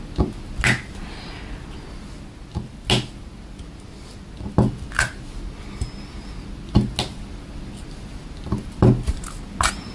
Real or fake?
real